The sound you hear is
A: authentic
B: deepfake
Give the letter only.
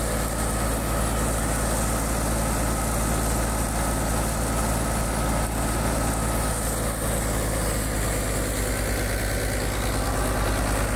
A